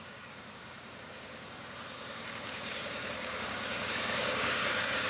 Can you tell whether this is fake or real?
fake